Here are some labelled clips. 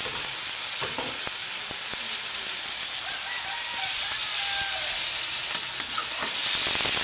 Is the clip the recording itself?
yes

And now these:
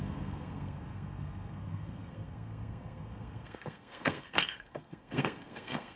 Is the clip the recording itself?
no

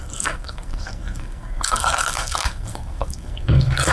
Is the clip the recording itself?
no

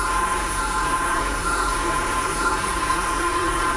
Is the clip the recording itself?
no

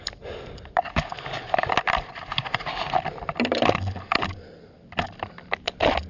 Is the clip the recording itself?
yes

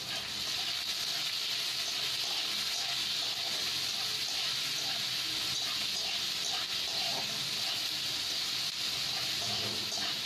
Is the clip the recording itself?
yes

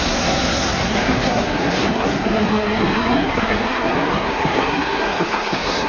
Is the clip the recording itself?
no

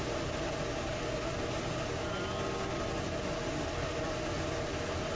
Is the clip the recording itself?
yes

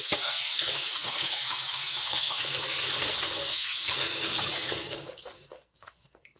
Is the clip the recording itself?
no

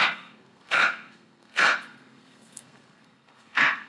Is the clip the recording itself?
no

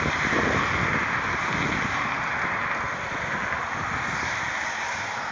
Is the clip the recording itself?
yes